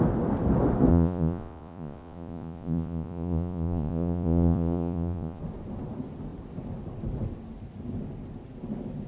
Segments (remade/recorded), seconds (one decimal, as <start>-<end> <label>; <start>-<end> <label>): 0.0-0.9 recorded; 0.9-5.4 remade; 5.4-9.1 recorded